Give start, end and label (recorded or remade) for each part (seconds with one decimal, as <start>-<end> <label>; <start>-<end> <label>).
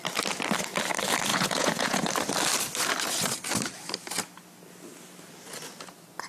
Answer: 0.0-1.3 recorded; 1.3-2.1 remade; 2.1-6.3 recorded